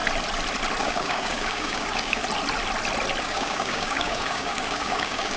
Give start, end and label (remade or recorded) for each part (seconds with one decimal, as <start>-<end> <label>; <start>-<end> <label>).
0.0-0.8 recorded; 0.8-2.2 remade; 2.2-3.2 recorded; 3.2-5.4 remade